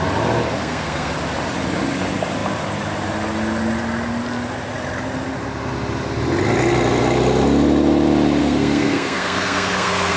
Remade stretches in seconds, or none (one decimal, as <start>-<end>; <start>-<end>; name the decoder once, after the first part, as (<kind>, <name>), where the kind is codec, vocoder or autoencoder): 0.6-1.1 (codec, SNAC); 8.4-10.2